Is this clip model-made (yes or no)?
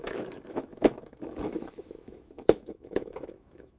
yes